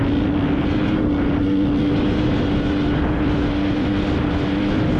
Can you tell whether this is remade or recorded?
recorded